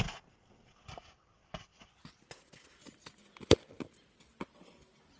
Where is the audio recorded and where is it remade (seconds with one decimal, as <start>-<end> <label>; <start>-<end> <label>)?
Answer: 0.0-5.2 recorded